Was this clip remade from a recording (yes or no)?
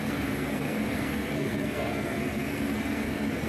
yes